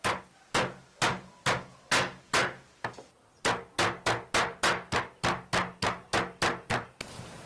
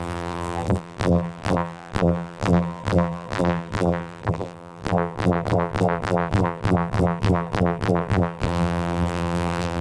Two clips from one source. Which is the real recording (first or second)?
first